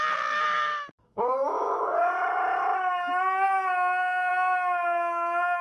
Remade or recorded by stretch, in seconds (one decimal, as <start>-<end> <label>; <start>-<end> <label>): 0.0-0.7 recorded; 0.7-1.8 remade; 1.8-5.6 recorded